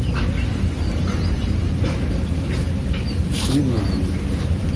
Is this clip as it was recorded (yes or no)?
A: yes